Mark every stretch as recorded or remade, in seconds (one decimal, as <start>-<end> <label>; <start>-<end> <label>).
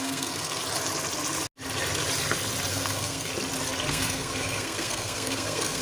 0.0-0.6 remade; 0.6-2.7 recorded; 2.7-3.3 remade; 3.3-3.9 recorded; 3.9-5.8 remade